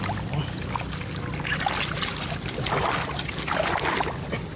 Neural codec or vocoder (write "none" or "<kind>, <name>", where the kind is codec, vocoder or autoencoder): none